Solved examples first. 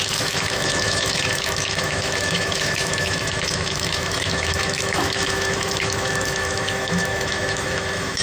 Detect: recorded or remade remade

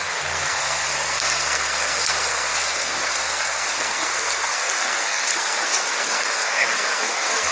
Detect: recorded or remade remade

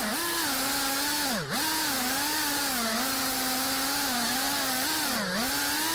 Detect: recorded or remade recorded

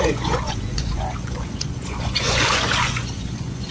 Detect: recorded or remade remade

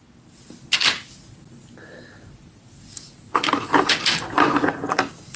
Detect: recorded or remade recorded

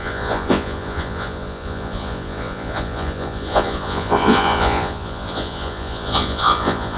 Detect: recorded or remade remade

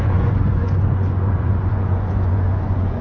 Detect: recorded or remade remade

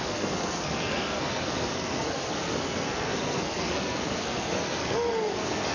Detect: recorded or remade remade